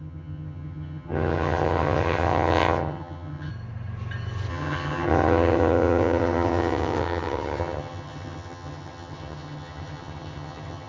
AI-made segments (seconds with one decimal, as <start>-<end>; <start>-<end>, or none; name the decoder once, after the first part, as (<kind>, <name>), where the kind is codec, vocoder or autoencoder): 0.0-3.5 (vocoder, HiFi-GAN); 4.5-10.9